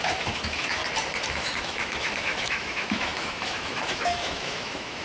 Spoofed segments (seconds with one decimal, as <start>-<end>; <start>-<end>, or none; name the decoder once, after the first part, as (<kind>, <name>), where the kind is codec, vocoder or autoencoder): 0.0-0.8 (autoencoder, DAC-VAE); 1.3-5.0